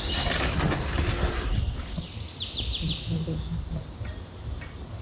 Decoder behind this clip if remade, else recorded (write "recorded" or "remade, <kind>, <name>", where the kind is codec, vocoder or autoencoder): recorded